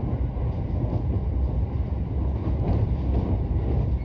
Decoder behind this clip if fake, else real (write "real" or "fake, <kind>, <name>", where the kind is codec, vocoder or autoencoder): real